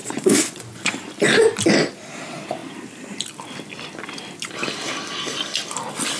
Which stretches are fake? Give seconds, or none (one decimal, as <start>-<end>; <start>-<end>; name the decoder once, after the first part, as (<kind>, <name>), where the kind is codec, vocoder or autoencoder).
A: 0.0-0.9 (vocoder, Vocos)